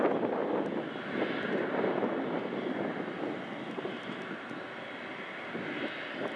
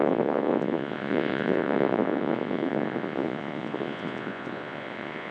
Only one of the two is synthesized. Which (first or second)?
second